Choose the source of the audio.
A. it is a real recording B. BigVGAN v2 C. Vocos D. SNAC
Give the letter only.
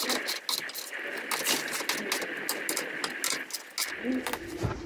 A